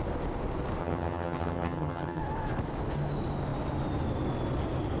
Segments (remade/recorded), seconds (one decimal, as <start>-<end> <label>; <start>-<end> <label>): 0.0-0.8 recorded; 0.8-2.2 remade; 2.2-5.0 recorded